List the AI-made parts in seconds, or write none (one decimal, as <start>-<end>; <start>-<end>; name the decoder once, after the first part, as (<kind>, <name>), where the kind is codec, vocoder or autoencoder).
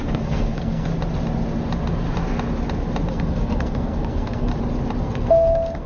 0.0-0.9 (codec, SNAC); 3.1-4.5; 5.0-5.9